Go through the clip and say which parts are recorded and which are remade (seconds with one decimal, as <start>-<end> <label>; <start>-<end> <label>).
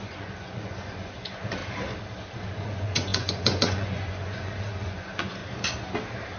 0.0-1.6 remade; 1.6-2.5 recorded; 2.5-5.4 remade; 5.4-6.4 recorded